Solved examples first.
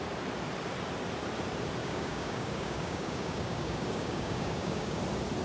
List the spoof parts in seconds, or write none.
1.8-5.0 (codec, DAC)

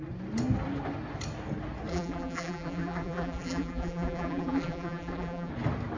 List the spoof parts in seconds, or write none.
1.9-5.5 (vocoder, BigVGAN v2)

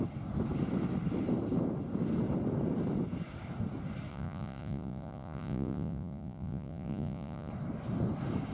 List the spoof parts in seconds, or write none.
4.1-7.5 (vocoder, Vocos)

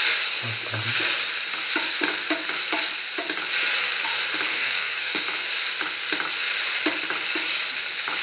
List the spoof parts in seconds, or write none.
4.5-5.2 (codec, SNAC)

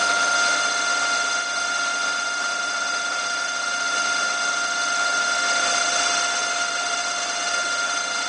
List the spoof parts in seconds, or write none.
1.9-4.5 (vocoder, BigVGAN v2); 6.4-8.3

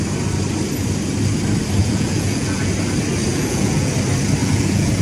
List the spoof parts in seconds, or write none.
1.8-2.7 (vocoder, Vocos); 3.3-3.9; 4.4-5.0

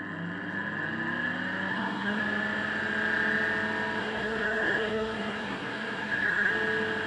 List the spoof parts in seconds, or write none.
1.7-2.2 (codec, SNAC); 4.0-6.5

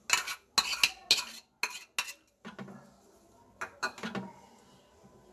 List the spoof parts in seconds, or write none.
none